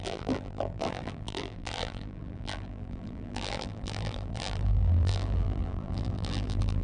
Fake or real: fake